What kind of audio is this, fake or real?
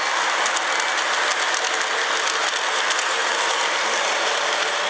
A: real